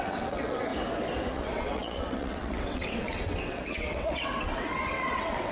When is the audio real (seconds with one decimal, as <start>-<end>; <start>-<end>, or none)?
0.7-1.3